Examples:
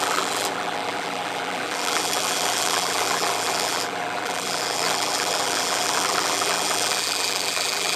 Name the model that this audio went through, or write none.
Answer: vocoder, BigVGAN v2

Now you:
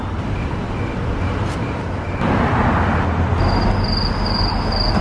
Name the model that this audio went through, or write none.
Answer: none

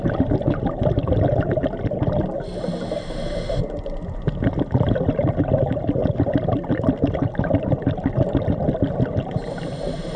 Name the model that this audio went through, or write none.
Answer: none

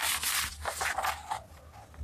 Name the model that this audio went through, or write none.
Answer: none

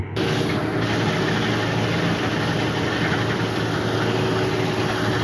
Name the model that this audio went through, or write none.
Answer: none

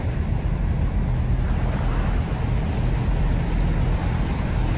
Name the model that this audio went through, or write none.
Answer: none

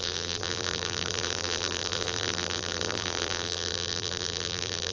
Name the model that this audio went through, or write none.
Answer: vocoder, BigVGAN v2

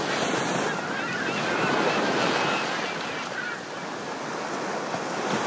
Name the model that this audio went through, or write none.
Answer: none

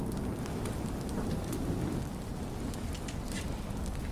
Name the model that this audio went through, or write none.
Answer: none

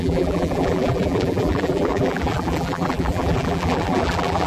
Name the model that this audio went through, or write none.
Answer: vocoder, BigVGAN v2